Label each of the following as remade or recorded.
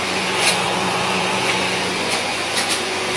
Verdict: remade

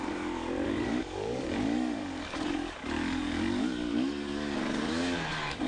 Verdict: remade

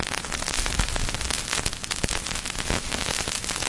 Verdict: recorded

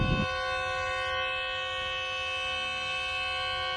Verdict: recorded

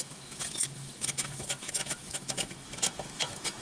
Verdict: remade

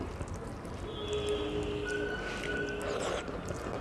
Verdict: recorded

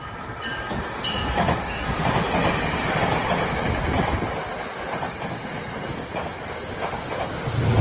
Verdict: recorded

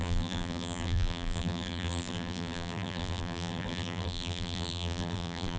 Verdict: remade